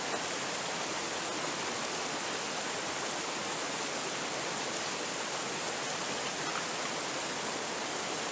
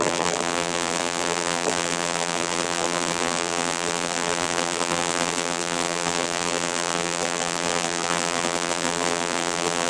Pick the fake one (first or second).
second